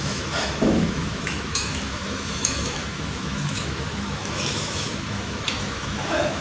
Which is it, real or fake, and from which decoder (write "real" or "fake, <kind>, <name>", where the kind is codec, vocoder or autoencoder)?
fake, autoencoder, DAC-VAE